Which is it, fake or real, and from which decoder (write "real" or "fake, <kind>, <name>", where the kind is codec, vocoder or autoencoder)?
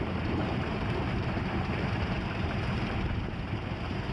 fake, vocoder, BigVGAN v2